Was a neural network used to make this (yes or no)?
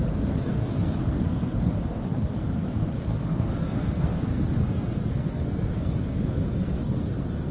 yes